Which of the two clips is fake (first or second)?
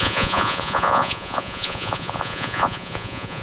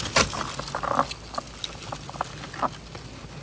first